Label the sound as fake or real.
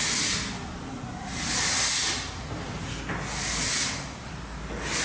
real